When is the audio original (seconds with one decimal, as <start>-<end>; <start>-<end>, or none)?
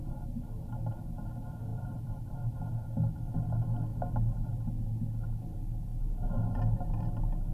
0.0-1.7; 2.7-3.9; 4.7-7.5